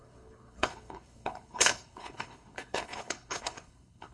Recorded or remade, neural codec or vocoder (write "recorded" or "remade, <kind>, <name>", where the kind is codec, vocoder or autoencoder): remade, codec, HILCodec